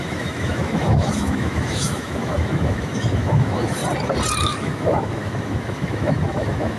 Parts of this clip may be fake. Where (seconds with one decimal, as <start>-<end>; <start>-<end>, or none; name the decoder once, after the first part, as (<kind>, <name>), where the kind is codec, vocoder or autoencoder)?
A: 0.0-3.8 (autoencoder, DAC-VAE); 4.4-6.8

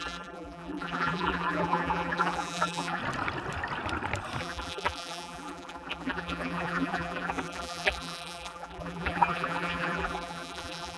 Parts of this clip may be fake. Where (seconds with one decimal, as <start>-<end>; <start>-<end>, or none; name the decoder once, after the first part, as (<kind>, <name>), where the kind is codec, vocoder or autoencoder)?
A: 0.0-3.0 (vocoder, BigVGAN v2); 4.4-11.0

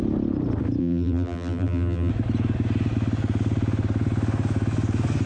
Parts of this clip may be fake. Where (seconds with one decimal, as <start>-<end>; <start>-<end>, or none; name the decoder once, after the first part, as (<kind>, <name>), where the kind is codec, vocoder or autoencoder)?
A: 0.8-2.1 (vocoder, BigVGAN v2)